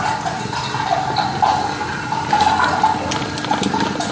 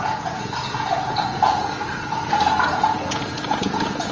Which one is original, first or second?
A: first